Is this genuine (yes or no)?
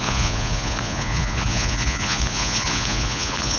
no